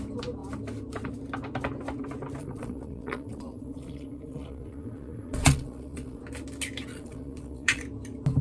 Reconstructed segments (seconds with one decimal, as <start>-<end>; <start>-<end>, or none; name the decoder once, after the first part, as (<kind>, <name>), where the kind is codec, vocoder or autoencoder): 2.4-6.2 (vocoder, Vocos); 6.9-7.8